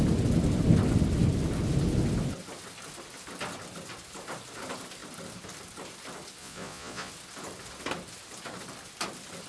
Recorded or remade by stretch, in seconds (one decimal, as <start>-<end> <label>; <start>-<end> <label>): 0.0-6.4 recorded; 6.4-7.1 remade; 7.1-9.5 recorded